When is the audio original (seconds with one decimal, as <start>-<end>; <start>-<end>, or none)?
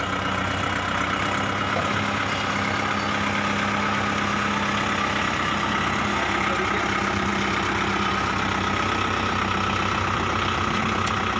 0.0-11.4